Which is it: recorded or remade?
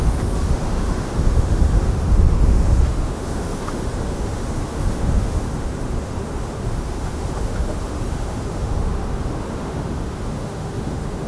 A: remade